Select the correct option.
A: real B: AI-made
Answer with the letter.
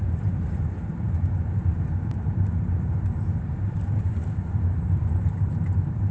B